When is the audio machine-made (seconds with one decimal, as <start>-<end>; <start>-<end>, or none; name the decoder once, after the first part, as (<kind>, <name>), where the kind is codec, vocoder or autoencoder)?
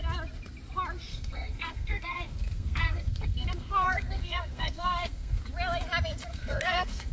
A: 1.1-5.4 (codec, SNAC); 6.3-7.1